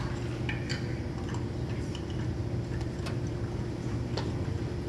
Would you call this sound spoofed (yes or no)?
no